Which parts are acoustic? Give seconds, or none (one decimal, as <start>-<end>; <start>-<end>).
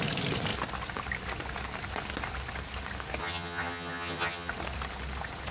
0.0-3.2; 4.5-5.5